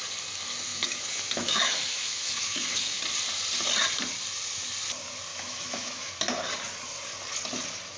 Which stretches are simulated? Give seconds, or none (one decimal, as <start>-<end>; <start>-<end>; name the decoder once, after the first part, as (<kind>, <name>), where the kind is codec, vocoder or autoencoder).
0.7-3.0 (autoencoder, DAC-VAE); 5.3-6.1